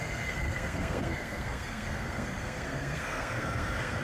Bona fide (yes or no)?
no